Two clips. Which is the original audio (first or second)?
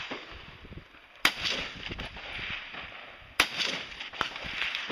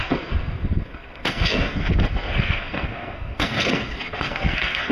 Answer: first